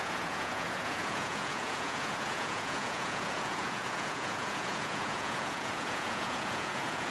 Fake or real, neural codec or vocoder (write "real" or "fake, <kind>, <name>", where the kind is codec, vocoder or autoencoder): fake, vocoder, Vocos